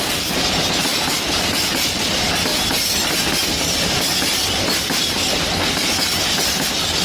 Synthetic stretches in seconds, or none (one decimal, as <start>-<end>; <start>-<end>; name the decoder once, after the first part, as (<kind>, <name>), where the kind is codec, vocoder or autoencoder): 0.9-2.0 (vocoder, BigVGAN v2)